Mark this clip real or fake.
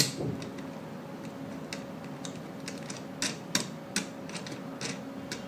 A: real